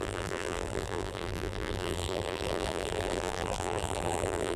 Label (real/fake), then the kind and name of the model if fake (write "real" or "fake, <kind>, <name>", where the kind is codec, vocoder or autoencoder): fake, vocoder, BigVGAN v2